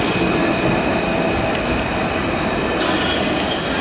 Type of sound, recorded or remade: recorded